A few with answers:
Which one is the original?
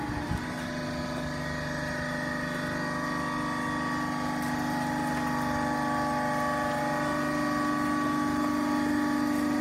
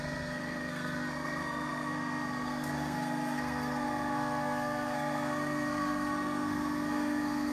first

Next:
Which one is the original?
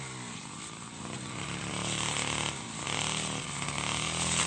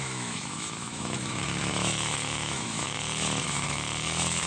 first